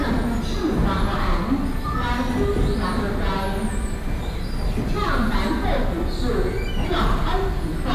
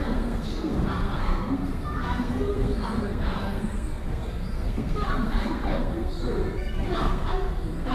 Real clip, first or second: first